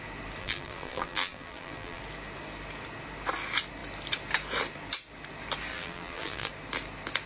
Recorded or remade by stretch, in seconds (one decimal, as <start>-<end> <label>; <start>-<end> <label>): 0.0-0.4 recorded; 0.4-2.0 remade; 2.0-5.7 recorded; 5.7-6.5 remade; 6.5-7.3 recorded